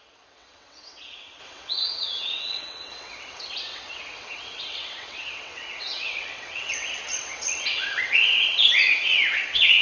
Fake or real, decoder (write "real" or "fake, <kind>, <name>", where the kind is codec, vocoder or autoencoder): fake, vocoder, WaveNeXt